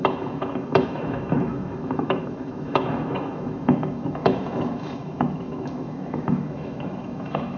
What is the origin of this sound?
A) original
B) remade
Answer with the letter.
B